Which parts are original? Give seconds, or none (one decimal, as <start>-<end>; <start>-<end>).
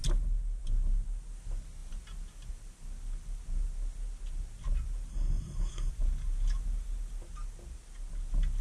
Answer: 0.0-5.1; 5.9-8.6